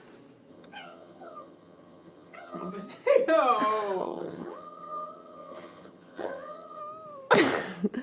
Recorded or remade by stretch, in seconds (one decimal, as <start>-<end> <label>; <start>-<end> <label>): 0.0-0.5 recorded; 0.5-2.7 remade; 2.7-4.0 recorded; 4.0-6.8 remade; 6.8-8.0 recorded